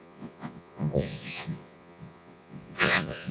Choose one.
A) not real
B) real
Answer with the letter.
A